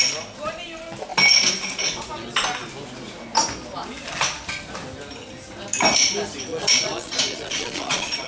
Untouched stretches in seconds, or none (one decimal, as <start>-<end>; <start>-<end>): 0.0-6.5